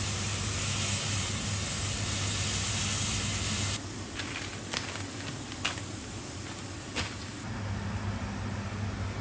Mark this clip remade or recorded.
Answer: recorded